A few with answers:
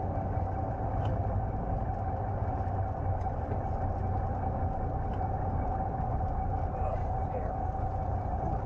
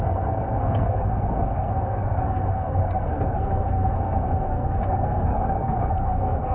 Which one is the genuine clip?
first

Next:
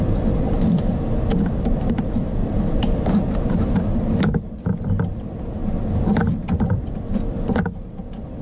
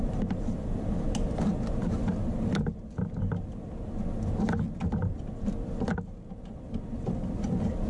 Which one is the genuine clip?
second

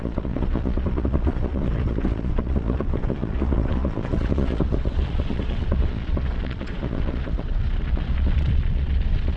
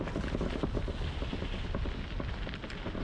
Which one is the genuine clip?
second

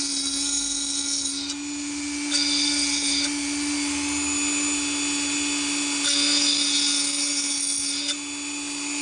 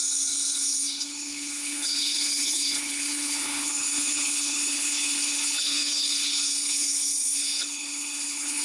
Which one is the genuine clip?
first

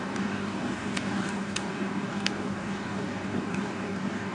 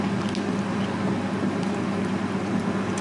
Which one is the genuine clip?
second